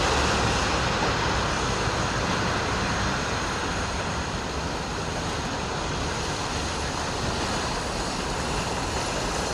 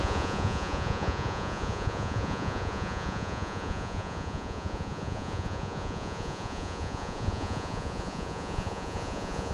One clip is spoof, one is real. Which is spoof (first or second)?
second